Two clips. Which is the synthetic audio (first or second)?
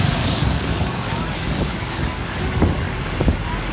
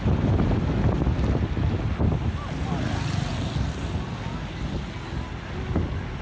first